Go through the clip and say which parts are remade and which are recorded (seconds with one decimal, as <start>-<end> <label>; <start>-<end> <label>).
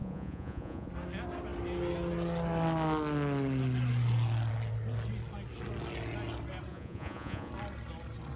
0.0-0.9 remade; 0.9-6.7 recorded; 6.7-7.5 remade; 7.5-8.4 recorded